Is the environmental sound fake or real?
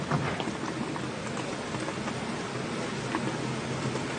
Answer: real